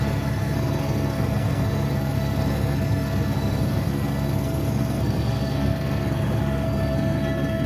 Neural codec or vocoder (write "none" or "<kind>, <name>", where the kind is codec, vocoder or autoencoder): codec, SNAC